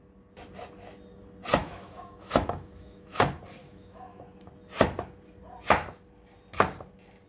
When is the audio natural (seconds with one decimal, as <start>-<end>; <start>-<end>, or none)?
0.0-1.6; 3.2-3.6; 4.2-7.3